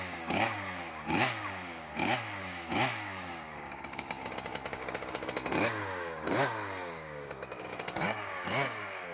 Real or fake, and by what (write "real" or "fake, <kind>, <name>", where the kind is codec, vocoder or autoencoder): fake, codec, DAC